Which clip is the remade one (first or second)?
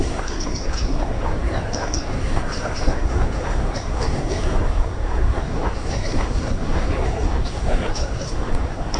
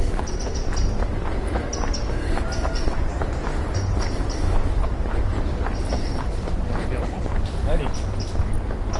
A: first